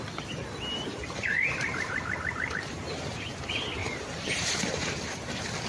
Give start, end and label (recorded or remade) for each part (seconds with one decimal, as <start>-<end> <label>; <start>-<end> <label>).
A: 0.0-0.9 recorded; 0.9-3.4 remade; 3.4-3.8 recorded; 3.8-5.2 remade; 5.2-5.7 recorded